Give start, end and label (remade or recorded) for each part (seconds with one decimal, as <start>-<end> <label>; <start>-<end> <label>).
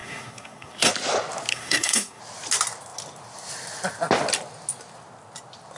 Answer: 0.0-0.9 remade; 0.9-1.5 recorded; 1.5-2.2 remade; 2.2-5.8 recorded